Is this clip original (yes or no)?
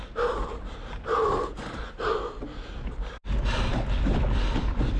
yes